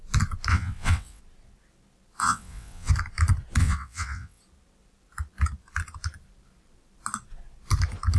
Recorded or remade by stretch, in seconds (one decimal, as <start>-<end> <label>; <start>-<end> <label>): 0.0-0.5 recorded; 0.5-1.2 remade; 1.2-2.2 recorded; 2.2-2.9 remade; 2.9-3.6 recorded; 3.6-4.4 remade; 4.4-8.2 recorded